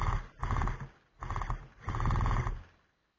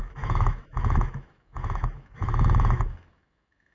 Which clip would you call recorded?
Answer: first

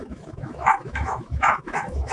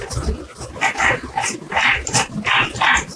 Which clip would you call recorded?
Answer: second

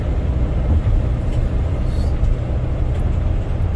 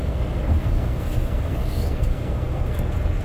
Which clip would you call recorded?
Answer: first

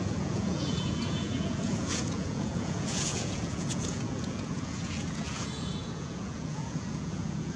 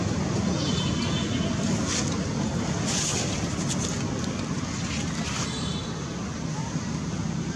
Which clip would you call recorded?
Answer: second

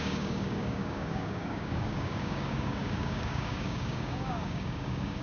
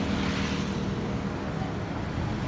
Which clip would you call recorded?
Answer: second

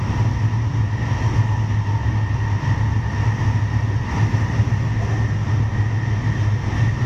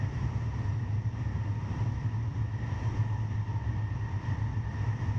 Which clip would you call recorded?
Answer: first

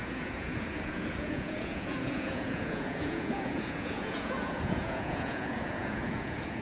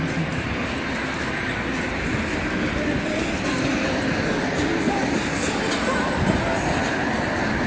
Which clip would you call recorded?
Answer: second